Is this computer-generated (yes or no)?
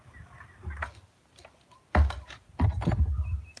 no